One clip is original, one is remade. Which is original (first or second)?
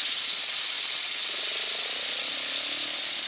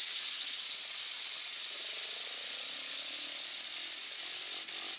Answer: first